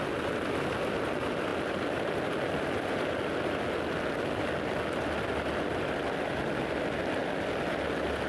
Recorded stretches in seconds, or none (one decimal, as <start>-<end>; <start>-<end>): 0.0-8.3